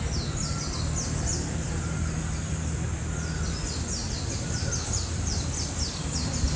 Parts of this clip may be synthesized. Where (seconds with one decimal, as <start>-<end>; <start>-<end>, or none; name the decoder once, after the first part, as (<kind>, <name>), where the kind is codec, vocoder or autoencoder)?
1.3-1.8 (vocoder, BigVGAN v2); 4.0-5.7

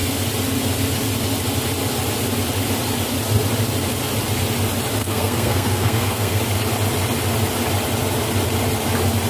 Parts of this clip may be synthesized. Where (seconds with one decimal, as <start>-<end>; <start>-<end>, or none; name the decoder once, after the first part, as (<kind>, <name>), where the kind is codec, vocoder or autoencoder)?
5.0-6.4 (codec, SNAC)

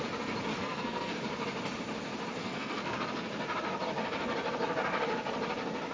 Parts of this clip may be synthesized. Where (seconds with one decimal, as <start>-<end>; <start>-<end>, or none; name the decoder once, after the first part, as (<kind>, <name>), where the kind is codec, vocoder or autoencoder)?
0.5-1.1 (codec, SNAC); 2.4-3.0

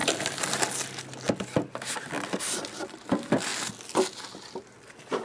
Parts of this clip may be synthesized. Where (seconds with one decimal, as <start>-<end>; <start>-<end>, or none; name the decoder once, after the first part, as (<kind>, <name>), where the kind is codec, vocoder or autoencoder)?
none

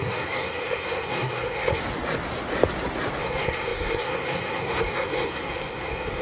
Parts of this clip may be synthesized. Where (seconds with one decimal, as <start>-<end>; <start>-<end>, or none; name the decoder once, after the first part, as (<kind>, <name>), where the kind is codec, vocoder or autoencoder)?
0.0-1.8 (codec, SNAC); 3.2-6.2

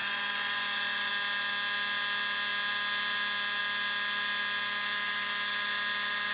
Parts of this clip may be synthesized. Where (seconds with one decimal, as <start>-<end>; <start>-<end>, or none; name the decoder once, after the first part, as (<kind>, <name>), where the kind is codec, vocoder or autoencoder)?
0.0-1.1 (vocoder, Vocos)

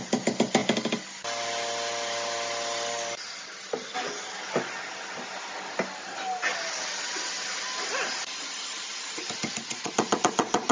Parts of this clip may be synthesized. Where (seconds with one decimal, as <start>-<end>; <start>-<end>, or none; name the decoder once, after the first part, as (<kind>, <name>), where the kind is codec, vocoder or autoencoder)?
9.6-10.7 (vocoder, Vocos)

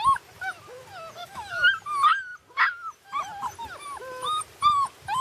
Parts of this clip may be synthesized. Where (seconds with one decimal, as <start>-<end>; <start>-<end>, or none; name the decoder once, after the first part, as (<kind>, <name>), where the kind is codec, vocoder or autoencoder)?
1.2-1.7 (autoencoder, DAC-VAE)